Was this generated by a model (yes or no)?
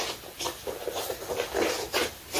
yes